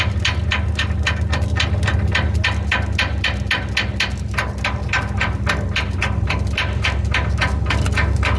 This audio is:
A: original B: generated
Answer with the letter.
A